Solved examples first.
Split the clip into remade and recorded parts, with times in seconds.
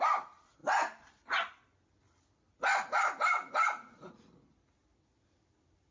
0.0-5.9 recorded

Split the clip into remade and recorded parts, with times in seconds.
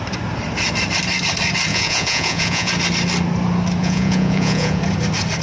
0.0-1.7 recorded; 1.7-2.7 remade; 2.7-3.8 recorded; 3.8-4.8 remade; 4.8-5.4 recorded